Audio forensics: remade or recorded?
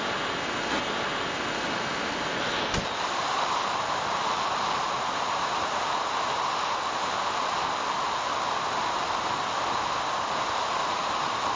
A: recorded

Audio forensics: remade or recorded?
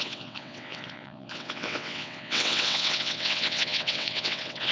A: remade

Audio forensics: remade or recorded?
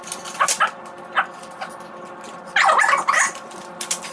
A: recorded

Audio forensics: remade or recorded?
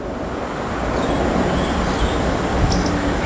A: recorded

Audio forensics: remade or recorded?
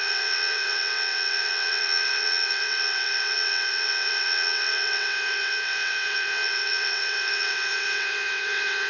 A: remade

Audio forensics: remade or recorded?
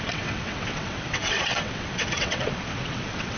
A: remade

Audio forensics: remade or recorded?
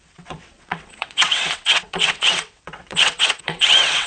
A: remade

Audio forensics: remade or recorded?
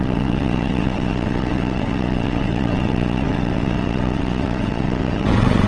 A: remade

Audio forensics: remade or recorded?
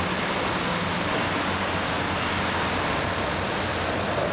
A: recorded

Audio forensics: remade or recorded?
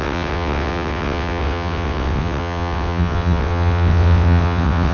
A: remade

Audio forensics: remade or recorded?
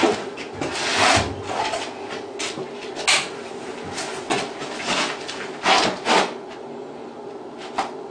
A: recorded